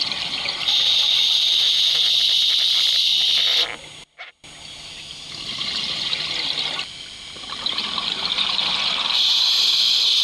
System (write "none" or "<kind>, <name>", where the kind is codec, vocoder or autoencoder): none